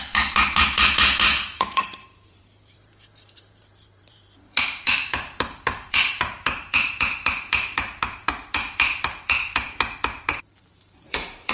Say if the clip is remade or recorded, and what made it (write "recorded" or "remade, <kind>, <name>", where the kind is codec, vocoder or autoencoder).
remade, vocoder, BigVGAN v2